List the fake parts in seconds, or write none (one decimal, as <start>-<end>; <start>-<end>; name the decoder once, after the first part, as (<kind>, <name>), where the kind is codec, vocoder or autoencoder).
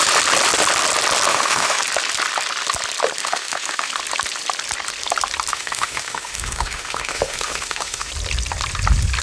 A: 1.3-1.8 (autoencoder, DAC-VAE); 3.2-3.9; 5.5-8.1